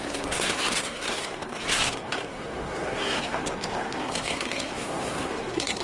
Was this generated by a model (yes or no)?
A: yes